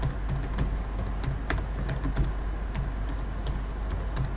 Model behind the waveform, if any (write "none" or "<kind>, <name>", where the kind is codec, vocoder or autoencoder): none